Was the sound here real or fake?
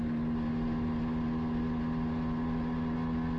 real